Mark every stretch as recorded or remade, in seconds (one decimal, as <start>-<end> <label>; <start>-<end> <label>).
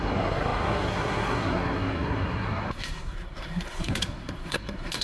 0.0-5.0 remade